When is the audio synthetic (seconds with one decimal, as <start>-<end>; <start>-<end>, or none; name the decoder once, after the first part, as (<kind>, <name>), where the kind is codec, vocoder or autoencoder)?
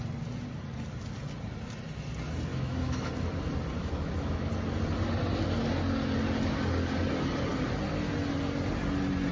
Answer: 2.5-3.1 (autoencoder, DAC-VAE); 3.8-4.5